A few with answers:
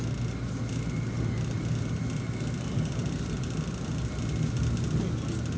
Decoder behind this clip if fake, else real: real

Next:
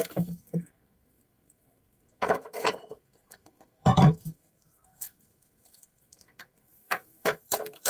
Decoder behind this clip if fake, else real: fake, codec, SNAC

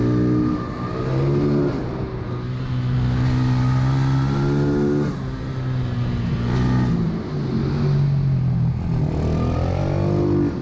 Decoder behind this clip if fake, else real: real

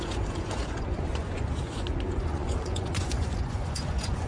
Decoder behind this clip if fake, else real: fake, vocoder, Vocos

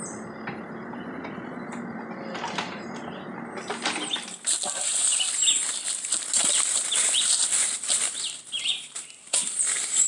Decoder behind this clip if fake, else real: real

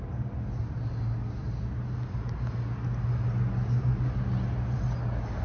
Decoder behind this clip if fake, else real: real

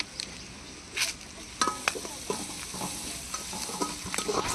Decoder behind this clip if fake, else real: real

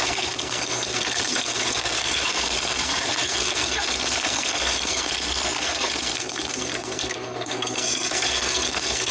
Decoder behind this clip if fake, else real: fake, codec, SNAC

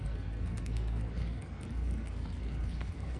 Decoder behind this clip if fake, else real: fake, codec, SNAC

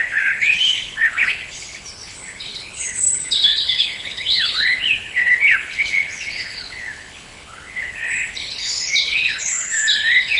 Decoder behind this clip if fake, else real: fake, codec, HILCodec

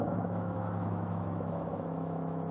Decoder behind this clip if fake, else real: fake, autoencoder, DAC-VAE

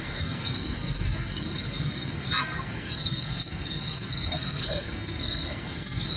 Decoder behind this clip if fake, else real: fake, codec, SNAC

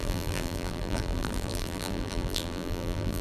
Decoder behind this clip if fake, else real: fake, vocoder, BigVGAN v2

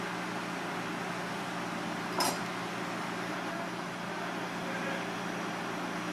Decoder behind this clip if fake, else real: real